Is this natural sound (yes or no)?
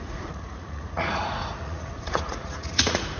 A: no